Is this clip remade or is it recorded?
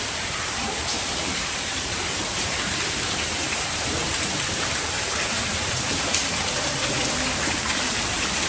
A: remade